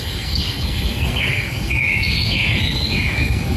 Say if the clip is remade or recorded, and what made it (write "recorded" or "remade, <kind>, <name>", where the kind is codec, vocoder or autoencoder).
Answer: remade, codec, SNAC